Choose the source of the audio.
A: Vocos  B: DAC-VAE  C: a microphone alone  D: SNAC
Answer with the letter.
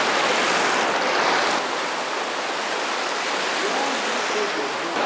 C